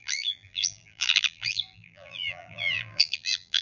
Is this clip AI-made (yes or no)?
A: yes